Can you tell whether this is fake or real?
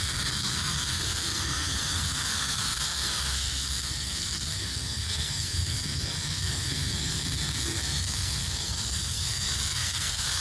fake